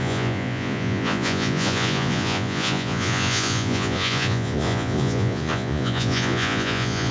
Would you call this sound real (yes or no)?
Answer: no